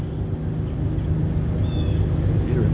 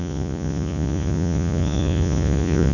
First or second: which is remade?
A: second